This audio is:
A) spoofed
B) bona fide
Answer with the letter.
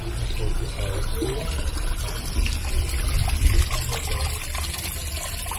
B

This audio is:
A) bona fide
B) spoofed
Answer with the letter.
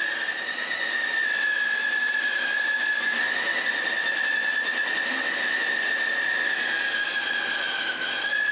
A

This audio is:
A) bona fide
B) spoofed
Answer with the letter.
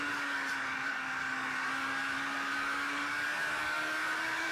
B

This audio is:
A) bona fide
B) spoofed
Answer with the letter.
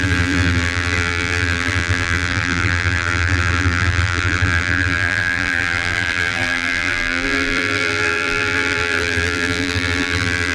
B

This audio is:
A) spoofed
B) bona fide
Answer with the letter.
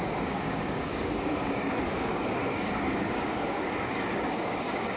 A